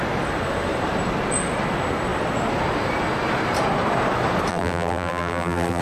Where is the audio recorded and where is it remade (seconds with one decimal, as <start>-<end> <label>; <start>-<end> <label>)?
0.0-4.5 recorded; 4.5-5.8 remade